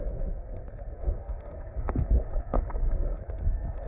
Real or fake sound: fake